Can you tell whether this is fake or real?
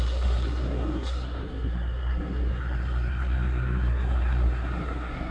fake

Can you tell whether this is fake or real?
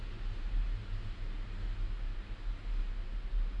real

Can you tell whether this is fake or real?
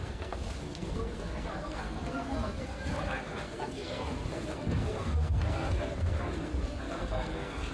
fake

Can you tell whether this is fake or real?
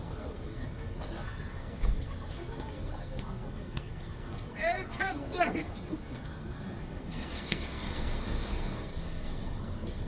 fake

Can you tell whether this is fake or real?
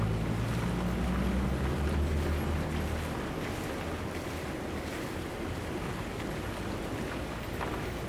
real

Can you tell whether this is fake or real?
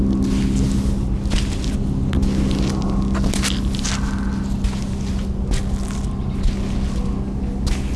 real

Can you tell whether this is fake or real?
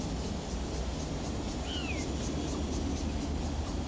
real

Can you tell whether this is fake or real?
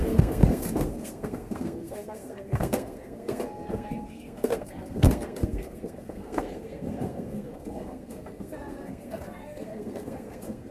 fake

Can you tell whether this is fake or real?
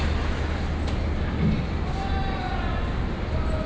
real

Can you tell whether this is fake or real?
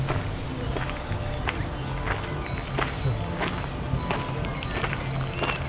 real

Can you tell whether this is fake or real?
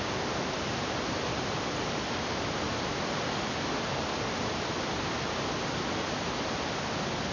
real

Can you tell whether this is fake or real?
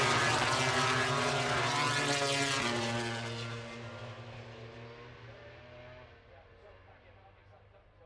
real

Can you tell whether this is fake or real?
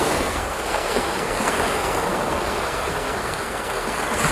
fake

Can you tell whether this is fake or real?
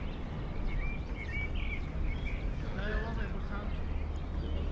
real